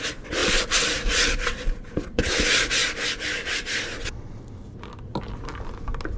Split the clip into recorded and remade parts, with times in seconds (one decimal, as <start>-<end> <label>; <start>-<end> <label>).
0.0-0.4 recorded; 0.4-2.2 remade; 2.2-6.2 recorded